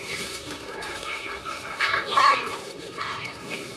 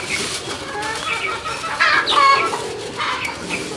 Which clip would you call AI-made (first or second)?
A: first